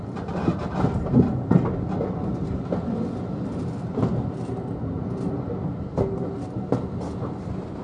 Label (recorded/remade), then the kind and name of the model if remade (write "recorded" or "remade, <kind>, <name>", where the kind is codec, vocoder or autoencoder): recorded